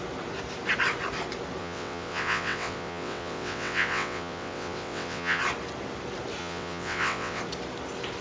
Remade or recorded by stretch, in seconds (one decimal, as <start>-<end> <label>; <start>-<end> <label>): 0.0-1.6 recorded; 1.6-5.4 remade; 5.4-6.4 recorded; 6.4-7.4 remade; 7.4-8.2 recorded